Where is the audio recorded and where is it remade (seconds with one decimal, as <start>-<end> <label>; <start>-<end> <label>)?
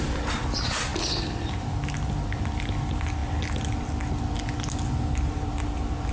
0.0-6.1 recorded